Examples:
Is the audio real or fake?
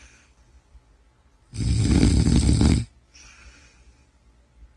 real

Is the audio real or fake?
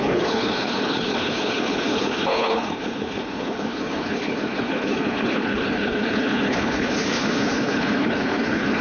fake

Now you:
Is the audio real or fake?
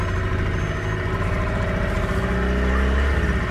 real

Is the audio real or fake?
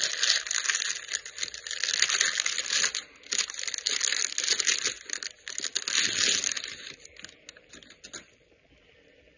real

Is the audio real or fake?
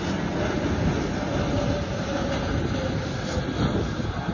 real